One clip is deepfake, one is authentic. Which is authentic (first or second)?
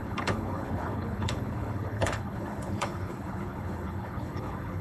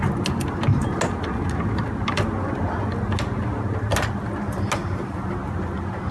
second